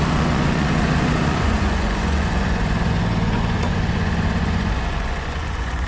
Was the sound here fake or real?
fake